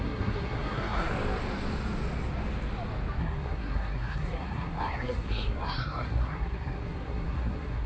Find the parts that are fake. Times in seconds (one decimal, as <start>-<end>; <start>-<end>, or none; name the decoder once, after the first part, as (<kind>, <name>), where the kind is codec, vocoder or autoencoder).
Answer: 0.0-1.1 (codec, SNAC); 3.2-7.9